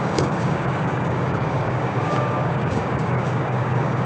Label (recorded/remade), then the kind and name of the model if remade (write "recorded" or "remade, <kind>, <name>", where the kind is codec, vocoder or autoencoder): remade, codec, DAC